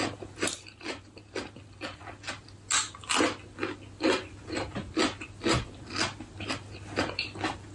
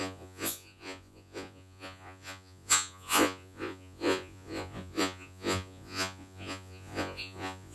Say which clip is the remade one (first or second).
second